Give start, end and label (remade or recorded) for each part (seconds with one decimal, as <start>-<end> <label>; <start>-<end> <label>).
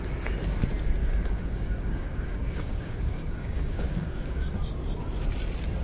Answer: 0.0-1.0 recorded; 1.0-4.5 remade; 4.5-5.8 recorded